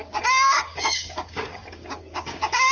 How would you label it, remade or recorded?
remade